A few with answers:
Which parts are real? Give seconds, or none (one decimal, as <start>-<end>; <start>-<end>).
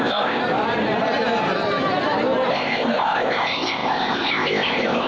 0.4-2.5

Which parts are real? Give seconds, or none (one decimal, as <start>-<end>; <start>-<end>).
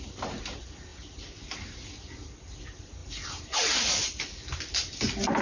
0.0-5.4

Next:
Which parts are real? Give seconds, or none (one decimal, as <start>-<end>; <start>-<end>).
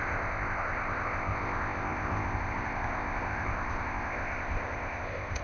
none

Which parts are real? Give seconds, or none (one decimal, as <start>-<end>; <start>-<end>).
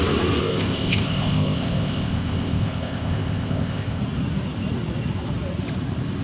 0.0-0.4; 4.0-6.2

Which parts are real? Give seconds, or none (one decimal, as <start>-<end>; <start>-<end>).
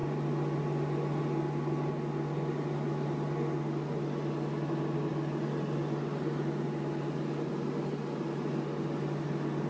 0.0-9.7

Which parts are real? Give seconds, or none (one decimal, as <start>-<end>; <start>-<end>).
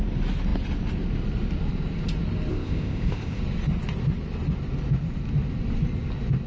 0.0-2.5; 3.4-6.5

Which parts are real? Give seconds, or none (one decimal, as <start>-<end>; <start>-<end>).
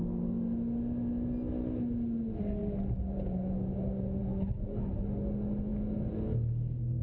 0.0-7.0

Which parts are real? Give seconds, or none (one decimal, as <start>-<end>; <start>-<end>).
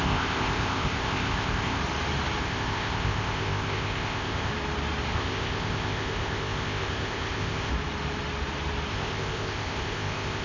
1.8-2.4; 4.5-5.1; 7.7-8.9